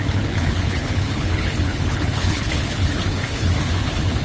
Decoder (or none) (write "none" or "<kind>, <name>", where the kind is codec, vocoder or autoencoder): codec, HILCodec